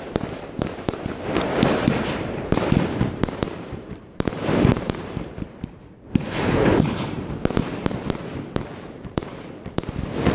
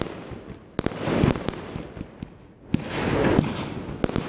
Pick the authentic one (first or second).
second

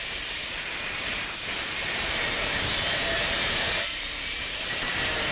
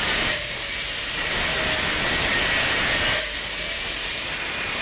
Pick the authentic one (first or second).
second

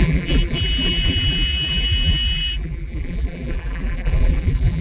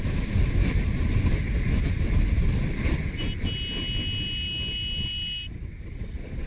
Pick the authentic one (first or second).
second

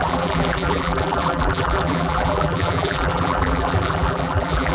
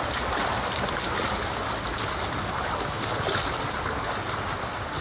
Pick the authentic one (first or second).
second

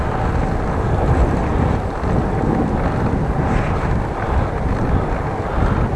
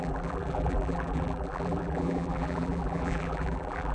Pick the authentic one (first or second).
first